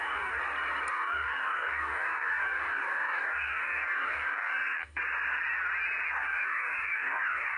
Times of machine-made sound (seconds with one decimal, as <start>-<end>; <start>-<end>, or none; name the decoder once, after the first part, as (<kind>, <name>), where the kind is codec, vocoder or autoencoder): 0.0-0.4 (codec, DAC); 0.9-5.0; 6.2-7.6

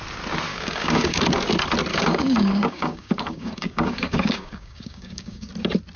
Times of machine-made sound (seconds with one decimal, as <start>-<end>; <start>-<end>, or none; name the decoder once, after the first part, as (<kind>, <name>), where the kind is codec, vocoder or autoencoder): 0.5-1.2 (codec, DAC); 1.9-5.5

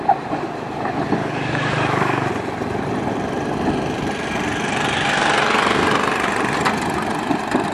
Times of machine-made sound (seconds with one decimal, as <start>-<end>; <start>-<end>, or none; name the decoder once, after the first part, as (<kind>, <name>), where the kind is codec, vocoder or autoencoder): 1.2-2.3 (codec, DAC)

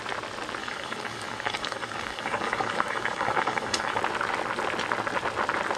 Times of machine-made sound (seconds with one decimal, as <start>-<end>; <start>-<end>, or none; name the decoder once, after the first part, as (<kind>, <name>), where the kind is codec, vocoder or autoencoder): 0.6-4.0 (codec, DAC)

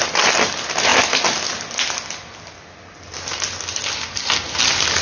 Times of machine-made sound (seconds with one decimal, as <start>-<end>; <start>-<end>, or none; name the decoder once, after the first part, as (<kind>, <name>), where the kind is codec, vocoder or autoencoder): none